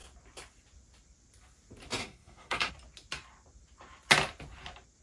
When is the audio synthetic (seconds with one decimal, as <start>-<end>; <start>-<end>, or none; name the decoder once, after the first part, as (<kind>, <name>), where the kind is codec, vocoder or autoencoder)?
2.0-2.7 (codec, SNAC)